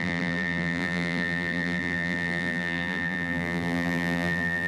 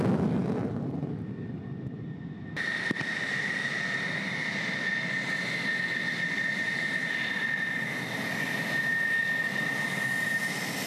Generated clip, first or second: first